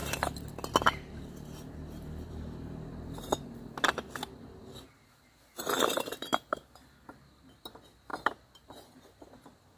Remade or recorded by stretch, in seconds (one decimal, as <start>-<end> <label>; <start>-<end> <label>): 0.0-9.8 recorded